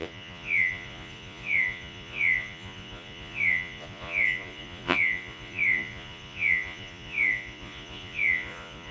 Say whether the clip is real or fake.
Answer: fake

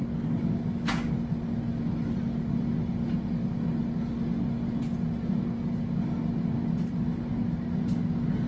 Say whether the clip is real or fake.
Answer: real